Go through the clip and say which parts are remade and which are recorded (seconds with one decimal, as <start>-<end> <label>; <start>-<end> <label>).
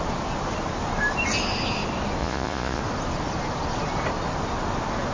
0.0-2.2 recorded; 2.2-2.8 remade; 2.8-5.1 recorded